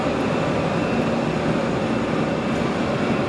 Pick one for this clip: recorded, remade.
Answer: recorded